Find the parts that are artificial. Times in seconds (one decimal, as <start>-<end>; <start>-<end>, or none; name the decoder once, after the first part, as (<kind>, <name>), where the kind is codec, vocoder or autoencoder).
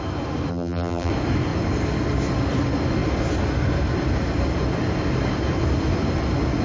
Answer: 0.5-1.1 (vocoder, BigVGAN v2)